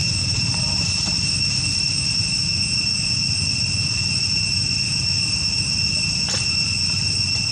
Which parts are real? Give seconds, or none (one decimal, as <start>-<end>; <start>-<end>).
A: 0.0-7.5